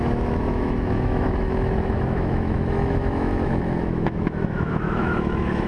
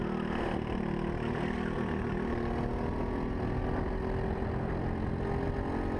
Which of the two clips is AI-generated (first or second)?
first